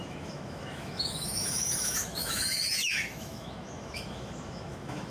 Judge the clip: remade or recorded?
remade